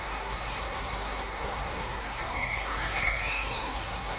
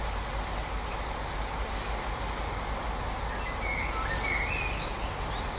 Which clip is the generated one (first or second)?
first